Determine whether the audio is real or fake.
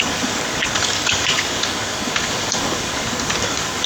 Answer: fake